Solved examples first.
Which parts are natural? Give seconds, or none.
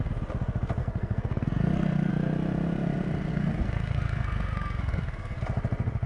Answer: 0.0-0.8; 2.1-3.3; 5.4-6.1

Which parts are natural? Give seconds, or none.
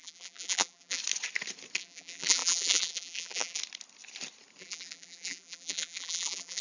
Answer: 1.0-1.8; 3.6-4.6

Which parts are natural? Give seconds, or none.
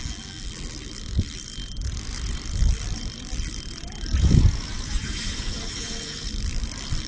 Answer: 0.0-4.1; 6.3-7.1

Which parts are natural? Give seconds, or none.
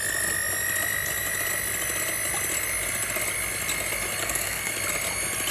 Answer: 0.0-4.2; 4.7-5.5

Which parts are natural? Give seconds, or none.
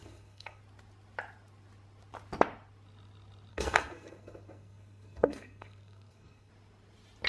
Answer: 0.6-3.5; 6.5-7.3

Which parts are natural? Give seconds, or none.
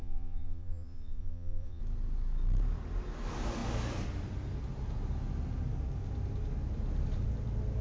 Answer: 1.8-7.8